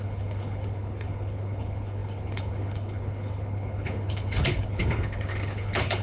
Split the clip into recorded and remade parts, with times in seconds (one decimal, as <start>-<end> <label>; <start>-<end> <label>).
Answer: 0.0-6.0 remade